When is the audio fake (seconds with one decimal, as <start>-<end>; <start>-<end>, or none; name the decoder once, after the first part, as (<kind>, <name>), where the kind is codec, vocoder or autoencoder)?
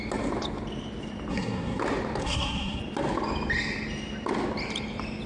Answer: 1.3-1.8 (codec, SNAC); 2.2-2.8